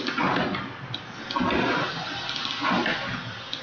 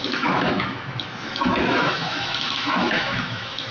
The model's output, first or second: second